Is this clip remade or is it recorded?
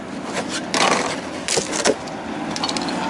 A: recorded